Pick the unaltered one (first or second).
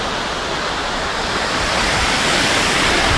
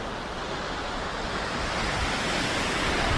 second